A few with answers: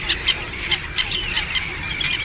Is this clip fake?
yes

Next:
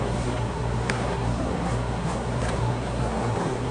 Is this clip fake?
yes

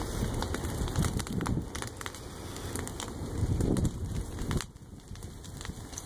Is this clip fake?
no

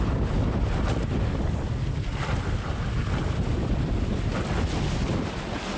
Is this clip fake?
no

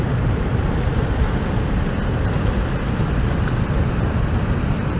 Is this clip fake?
no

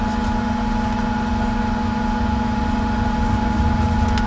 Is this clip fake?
no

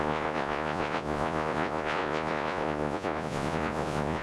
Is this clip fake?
yes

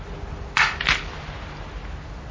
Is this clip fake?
no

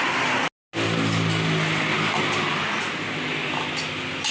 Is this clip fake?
no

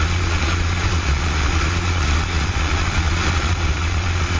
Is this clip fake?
yes